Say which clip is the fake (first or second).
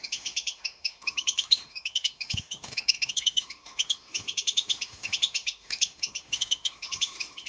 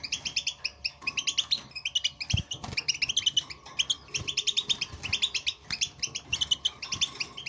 first